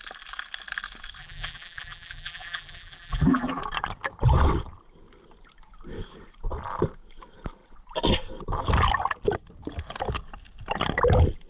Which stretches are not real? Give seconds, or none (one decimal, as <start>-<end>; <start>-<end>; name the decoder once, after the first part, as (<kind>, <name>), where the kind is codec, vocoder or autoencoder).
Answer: 1.2-3.6 (vocoder, BigVGAN v2)